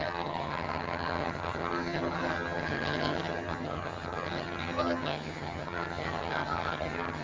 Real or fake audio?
fake